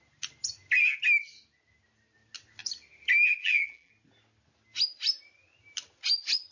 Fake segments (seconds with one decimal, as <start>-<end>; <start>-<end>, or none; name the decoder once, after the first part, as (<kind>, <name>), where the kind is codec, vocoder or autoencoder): 3.4-3.9 (vocoder, BigVGAN v2)